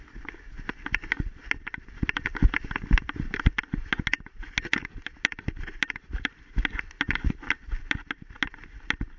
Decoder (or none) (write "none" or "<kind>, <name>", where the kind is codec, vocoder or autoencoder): none